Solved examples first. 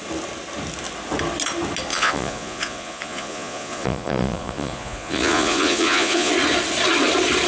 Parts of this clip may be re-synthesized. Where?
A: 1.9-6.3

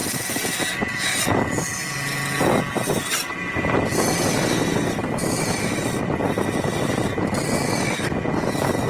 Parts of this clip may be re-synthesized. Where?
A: 5.2-7.4